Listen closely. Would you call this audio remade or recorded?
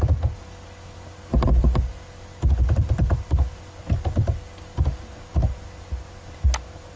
recorded